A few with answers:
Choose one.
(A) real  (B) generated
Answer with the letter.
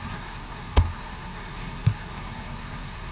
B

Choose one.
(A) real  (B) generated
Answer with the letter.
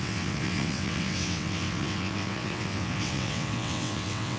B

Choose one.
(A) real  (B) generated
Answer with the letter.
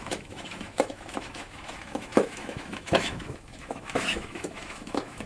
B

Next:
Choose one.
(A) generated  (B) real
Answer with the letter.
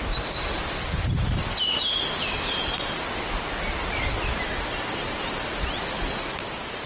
B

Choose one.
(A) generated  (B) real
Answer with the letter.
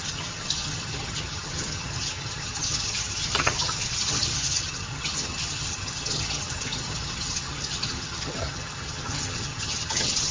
A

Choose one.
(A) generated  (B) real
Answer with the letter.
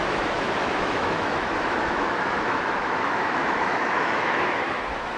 A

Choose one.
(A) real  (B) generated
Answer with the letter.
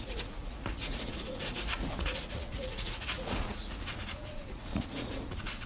B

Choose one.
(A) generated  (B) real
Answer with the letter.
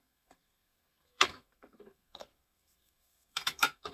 A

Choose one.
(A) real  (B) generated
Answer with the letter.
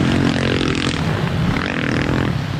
A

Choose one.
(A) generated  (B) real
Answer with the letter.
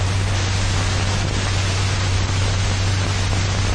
B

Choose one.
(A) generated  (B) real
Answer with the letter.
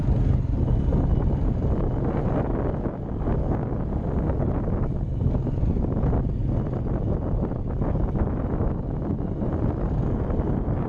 B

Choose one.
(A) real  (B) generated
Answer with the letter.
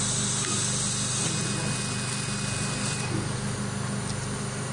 A